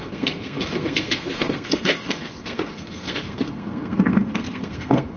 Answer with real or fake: fake